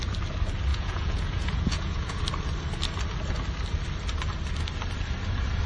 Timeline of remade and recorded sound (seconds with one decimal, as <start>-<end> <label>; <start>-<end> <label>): 0.0-0.7 recorded; 0.7-2.2 remade; 2.2-5.7 recorded